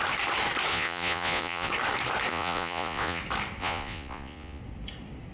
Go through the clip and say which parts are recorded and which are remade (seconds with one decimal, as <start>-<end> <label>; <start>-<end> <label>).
0.0-0.7 recorded; 0.7-1.7 remade; 1.7-2.3 recorded; 2.3-3.2 remade; 3.2-3.6 recorded; 3.6-4.6 remade; 4.6-5.3 recorded